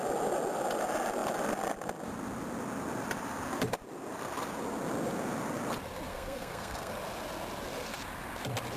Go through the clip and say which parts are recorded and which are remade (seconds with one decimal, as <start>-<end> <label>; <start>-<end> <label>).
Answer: 0.0-6.1 recorded; 6.1-6.9 remade; 6.9-8.8 recorded

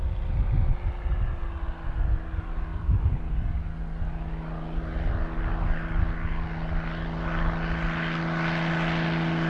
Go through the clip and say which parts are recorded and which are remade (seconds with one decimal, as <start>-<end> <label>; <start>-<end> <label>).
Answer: 0.0-9.5 recorded